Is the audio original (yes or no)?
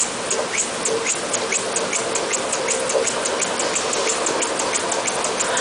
yes